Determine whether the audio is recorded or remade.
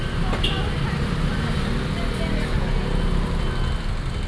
recorded